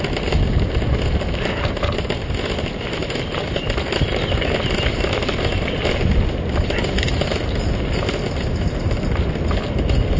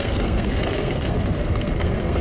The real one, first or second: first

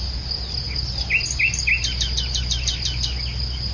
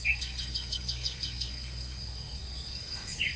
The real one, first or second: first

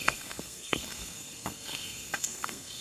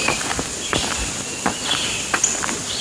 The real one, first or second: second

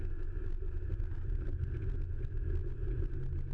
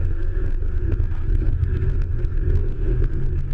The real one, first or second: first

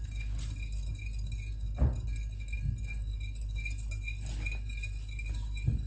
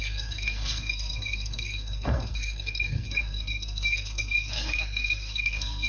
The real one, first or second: first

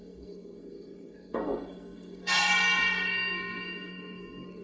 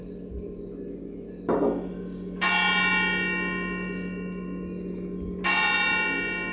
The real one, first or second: second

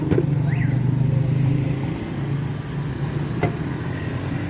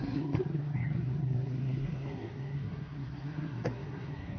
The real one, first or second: first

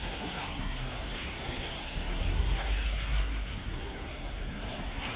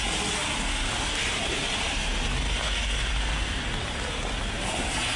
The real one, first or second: second